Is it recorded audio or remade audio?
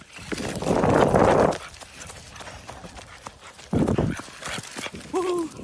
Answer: recorded